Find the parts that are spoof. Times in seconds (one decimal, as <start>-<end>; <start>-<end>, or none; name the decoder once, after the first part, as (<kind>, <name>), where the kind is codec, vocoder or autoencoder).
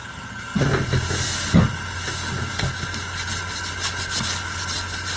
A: 0.0-0.7 (vocoder, HiFi-GAN)